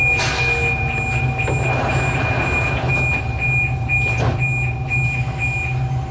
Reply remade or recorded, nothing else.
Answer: recorded